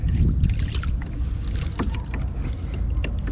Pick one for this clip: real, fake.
real